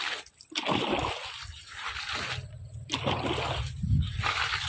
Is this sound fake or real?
real